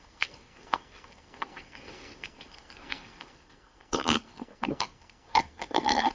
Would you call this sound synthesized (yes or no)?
yes